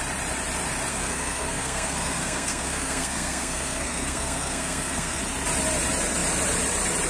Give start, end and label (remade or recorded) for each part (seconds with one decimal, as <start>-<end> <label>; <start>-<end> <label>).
0.0-0.9 recorded; 0.9-5.2 remade; 5.2-7.1 recorded